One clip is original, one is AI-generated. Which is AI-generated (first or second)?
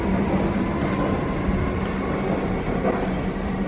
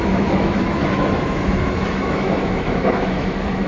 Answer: second